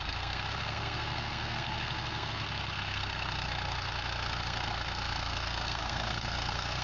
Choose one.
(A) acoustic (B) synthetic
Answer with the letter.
B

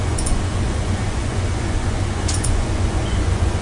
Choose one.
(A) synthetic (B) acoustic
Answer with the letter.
A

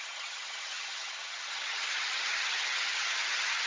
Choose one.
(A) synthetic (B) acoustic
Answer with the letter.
A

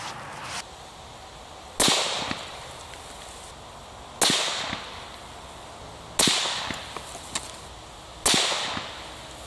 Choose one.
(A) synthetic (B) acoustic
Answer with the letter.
B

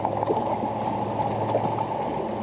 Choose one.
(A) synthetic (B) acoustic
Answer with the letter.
B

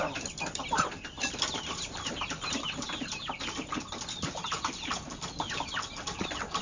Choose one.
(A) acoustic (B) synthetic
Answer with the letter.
B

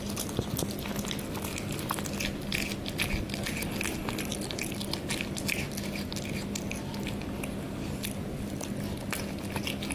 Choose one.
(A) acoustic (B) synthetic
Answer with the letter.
A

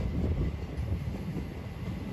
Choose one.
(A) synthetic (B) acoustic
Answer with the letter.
B